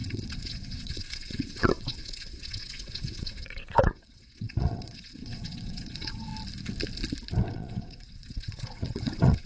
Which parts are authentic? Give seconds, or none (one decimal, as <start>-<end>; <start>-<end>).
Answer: 6.3-7.5